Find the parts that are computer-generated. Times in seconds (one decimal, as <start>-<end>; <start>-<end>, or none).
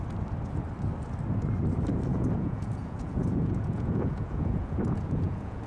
2.1-5.7